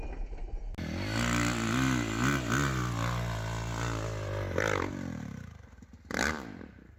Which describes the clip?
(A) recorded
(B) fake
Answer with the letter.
A